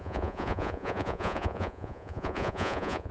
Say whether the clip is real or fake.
fake